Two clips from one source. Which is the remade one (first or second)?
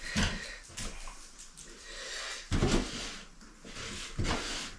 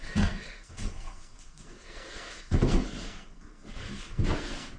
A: second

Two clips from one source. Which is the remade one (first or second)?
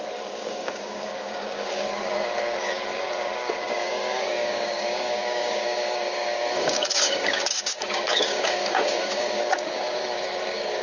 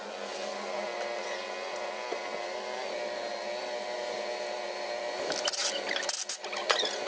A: first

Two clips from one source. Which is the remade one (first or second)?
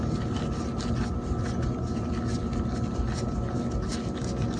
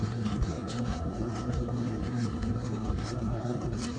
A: second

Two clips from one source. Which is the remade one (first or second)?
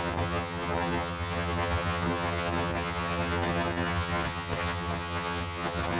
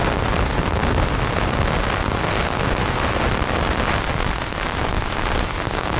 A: first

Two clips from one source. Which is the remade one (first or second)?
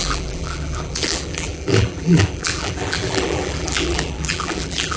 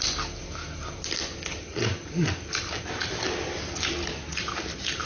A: first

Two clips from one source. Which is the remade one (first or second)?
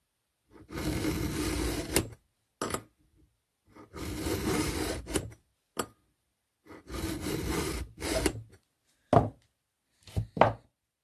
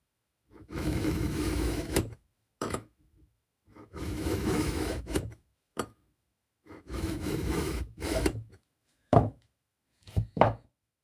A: second